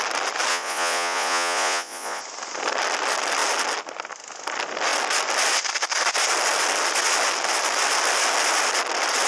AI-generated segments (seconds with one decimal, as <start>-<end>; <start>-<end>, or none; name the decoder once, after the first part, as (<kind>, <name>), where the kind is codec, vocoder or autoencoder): 0.5-2.2 (vocoder, Vocos)